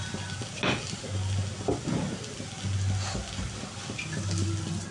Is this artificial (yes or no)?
no